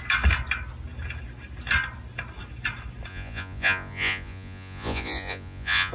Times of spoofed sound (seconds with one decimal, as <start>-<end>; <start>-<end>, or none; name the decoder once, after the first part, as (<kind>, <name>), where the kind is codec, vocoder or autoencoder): 3.1-5.9 (vocoder, Vocos)